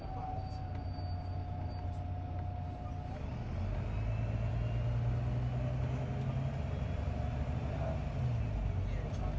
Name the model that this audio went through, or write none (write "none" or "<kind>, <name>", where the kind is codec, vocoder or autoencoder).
none